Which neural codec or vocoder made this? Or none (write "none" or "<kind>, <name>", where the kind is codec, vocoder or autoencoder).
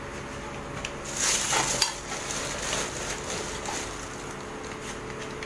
none